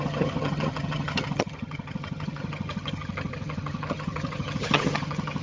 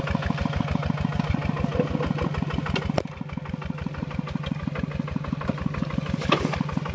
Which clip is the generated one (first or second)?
first